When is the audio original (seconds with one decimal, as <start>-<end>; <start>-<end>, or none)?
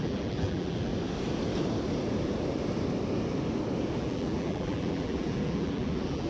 0.9-4.0